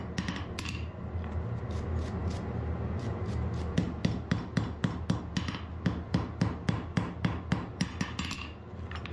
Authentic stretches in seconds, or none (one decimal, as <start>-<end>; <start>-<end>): 0.0-9.1